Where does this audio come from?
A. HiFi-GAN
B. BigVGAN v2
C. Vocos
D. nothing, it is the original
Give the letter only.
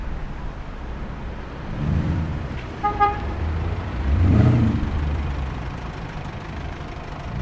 B